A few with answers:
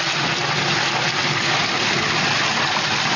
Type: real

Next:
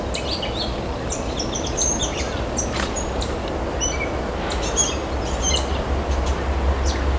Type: real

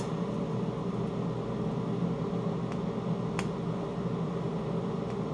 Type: real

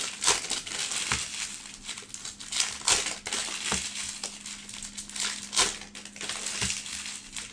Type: real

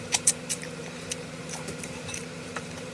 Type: fake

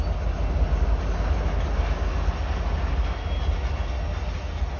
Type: real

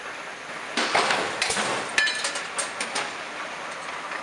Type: real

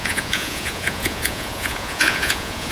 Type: fake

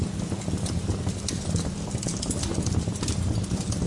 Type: real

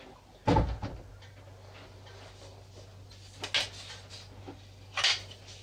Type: real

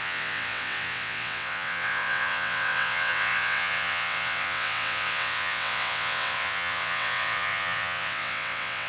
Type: fake